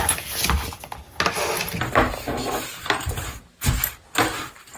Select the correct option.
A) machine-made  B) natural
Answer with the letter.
B